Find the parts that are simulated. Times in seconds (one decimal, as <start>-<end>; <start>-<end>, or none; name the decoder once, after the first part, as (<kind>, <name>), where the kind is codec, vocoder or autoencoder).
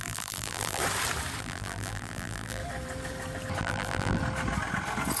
0.0-0.8 (vocoder, BigVGAN v2); 1.4-2.6; 3.6-4.2